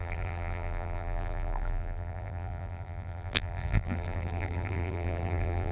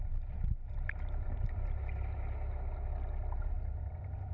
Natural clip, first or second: second